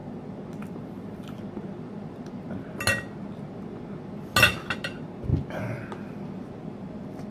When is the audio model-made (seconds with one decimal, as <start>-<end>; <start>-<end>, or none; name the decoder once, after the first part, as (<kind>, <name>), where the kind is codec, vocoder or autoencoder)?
none